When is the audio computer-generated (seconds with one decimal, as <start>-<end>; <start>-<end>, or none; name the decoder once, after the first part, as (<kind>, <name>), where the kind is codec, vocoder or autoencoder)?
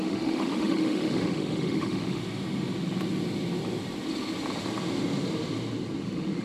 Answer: 0.0-2.2 (autoencoder, DAC-VAE); 6.0-6.4